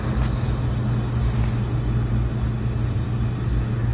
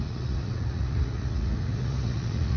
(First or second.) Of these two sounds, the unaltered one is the first